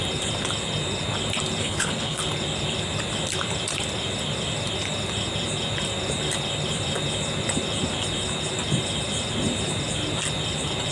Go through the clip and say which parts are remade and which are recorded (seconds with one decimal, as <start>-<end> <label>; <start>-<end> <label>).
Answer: 0.0-1.6 recorded; 1.6-2.2 remade; 2.2-10.9 recorded